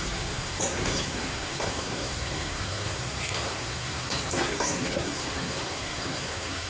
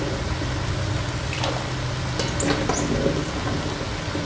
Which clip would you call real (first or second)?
second